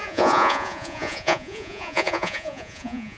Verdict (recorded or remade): remade